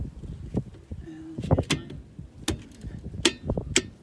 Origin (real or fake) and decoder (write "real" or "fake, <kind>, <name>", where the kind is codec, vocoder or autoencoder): real